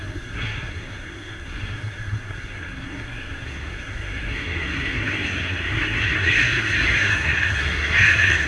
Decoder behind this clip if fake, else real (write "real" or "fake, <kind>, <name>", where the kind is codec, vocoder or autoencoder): fake, codec, SNAC